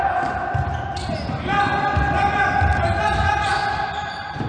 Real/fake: real